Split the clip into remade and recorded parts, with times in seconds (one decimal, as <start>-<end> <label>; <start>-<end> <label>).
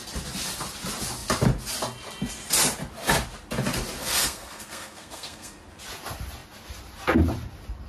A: 0.0-4.0 recorded; 4.0-5.6 remade; 5.6-7.9 recorded